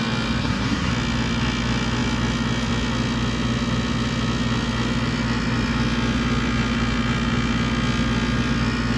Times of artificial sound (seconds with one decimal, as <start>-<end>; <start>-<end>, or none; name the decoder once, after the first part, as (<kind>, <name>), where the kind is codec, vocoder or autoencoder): 0.4-0.9 (codec, SNAC)